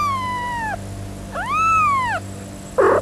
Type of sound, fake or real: real